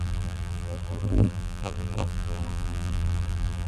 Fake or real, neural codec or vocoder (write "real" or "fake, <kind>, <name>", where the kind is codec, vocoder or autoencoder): fake, vocoder, BigVGAN v2